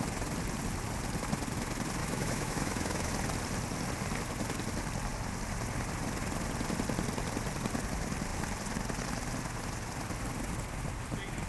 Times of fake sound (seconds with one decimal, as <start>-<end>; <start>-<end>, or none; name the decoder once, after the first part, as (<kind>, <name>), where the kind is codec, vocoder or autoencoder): 2.0-3.1 (autoencoder, DAC-VAE)